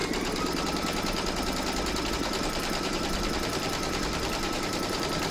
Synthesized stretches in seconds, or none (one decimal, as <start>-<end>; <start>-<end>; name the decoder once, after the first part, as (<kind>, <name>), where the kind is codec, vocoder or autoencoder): 2.1-5.3 (vocoder, BigVGAN v2)